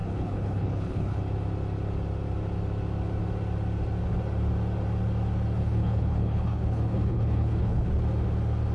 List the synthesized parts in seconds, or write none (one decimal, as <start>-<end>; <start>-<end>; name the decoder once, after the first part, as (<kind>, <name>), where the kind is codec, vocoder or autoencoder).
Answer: 0.0-1.2 (codec, HILCodec); 5.6-7.9